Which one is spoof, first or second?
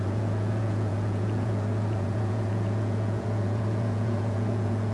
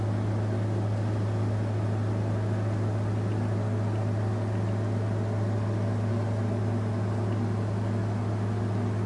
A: first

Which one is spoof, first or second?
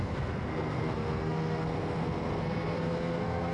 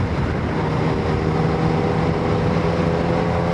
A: first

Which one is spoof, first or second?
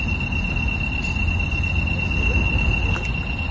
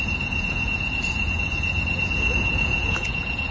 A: second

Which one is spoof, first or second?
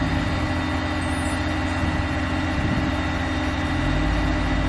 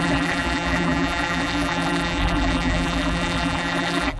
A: second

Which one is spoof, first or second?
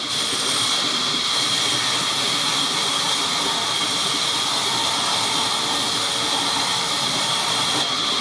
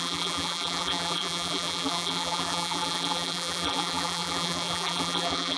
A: second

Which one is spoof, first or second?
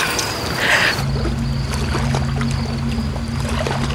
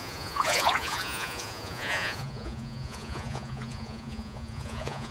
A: second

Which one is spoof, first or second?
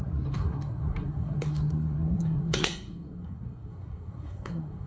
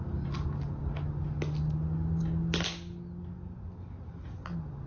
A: first